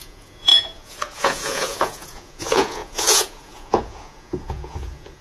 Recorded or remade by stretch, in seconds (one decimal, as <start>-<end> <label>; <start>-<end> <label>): 0.0-5.2 remade